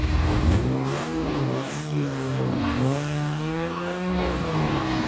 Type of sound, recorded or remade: remade